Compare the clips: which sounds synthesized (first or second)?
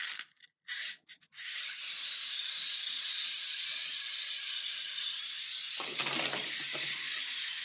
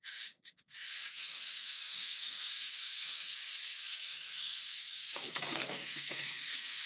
second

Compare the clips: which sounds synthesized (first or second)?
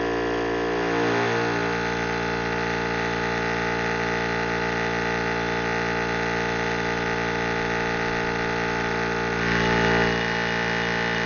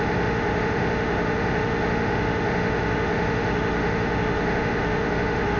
second